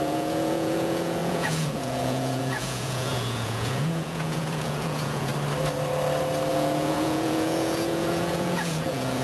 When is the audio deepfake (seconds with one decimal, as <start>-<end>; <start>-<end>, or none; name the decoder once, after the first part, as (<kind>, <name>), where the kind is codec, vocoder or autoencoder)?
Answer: 0.0-5.3 (vocoder, Vocos); 6.5-9.2